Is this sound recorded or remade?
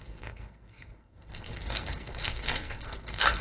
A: remade